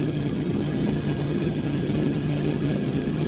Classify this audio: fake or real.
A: fake